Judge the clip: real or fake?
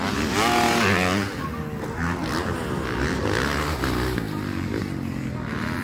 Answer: real